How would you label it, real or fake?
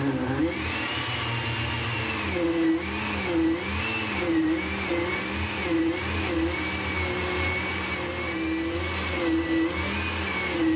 real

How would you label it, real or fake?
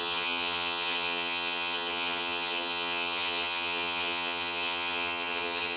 fake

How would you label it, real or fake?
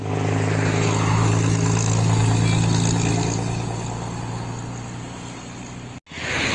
real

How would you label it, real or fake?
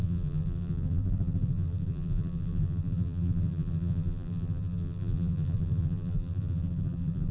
fake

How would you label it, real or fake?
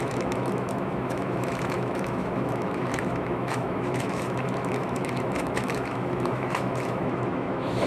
fake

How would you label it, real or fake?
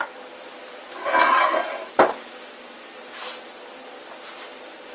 real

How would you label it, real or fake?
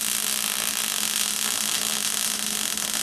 real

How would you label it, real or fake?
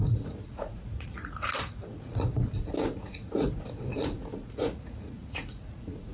fake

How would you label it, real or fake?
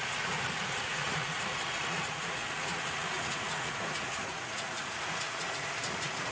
fake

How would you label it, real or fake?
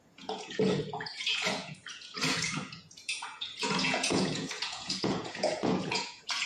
fake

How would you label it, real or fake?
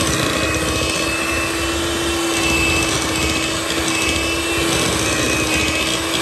real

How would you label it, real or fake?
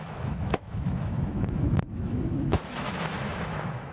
fake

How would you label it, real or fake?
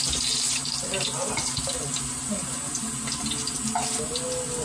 real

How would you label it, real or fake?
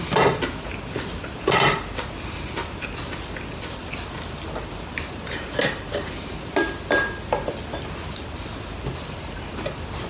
real